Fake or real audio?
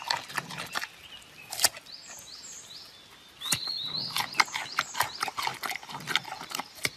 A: real